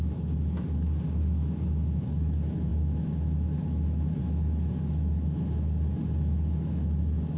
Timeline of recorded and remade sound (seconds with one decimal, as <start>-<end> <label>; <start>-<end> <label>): 0.0-7.4 remade